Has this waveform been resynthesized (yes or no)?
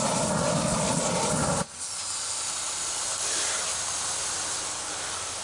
no